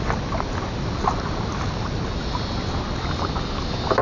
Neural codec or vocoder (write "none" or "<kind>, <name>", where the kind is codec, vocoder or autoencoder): none